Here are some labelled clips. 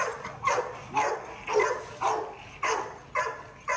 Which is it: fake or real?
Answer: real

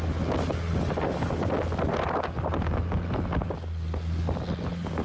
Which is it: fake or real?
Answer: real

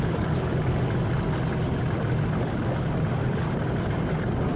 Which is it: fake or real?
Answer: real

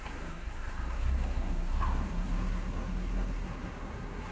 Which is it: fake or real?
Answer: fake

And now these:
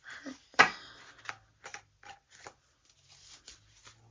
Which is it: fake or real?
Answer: real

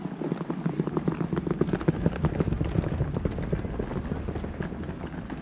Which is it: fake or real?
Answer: real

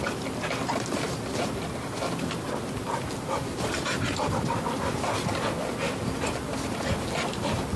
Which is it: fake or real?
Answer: real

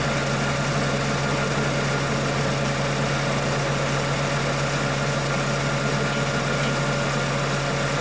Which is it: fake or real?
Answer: real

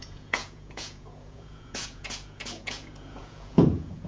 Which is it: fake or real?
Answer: fake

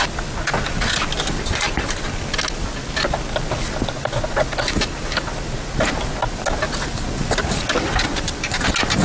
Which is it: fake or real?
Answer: real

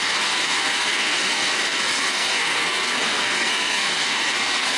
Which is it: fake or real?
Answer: fake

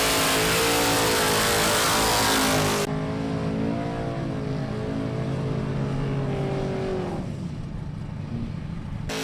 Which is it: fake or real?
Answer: real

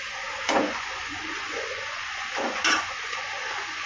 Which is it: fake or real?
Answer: fake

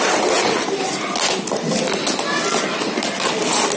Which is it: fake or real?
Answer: real